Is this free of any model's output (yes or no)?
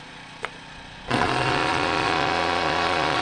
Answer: no